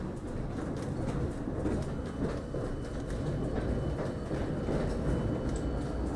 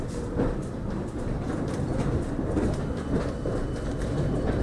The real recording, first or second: first